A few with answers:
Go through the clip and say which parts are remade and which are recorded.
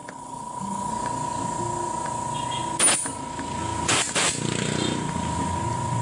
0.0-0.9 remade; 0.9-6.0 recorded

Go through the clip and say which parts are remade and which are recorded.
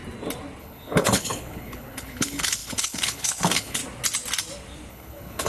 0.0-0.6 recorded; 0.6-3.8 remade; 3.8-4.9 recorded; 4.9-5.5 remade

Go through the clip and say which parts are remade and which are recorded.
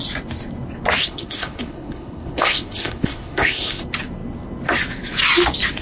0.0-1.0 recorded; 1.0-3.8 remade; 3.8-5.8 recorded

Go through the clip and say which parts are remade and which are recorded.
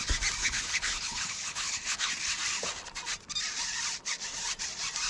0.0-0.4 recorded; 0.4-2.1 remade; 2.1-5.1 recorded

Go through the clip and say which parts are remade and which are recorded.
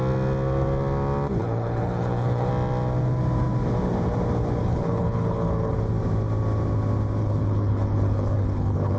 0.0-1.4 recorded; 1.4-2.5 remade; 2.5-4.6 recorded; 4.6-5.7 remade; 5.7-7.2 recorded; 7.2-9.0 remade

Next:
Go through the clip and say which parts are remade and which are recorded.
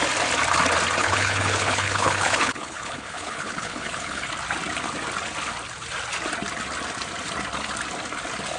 0.0-1.0 recorded; 1.0-4.3 remade; 4.3-8.6 recorded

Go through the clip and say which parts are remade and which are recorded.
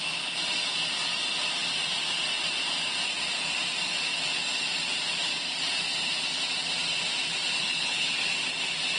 0.0-7.6 recorded; 7.6-8.1 remade; 8.1-9.0 recorded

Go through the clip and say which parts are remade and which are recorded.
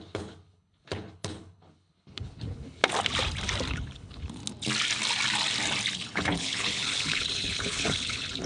0.0-2.8 remade; 2.8-3.7 recorded; 3.7-4.4 remade; 4.4-6.0 recorded; 6.0-8.5 remade